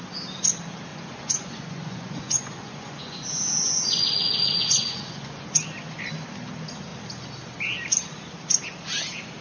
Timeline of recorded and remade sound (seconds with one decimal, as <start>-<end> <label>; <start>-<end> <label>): 0.0-0.9 recorded; 0.9-5.5 remade; 5.5-9.4 recorded